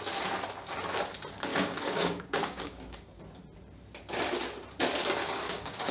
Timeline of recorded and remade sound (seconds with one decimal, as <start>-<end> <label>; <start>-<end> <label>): 0.0-1.5 recorded; 1.5-3.2 remade; 3.2-5.2 recorded; 5.2-5.9 remade